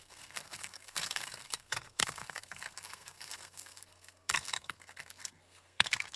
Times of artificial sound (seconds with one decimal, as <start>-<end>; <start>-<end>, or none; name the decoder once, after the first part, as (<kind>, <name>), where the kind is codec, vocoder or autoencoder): 0.0-6.2 (codec, SNAC)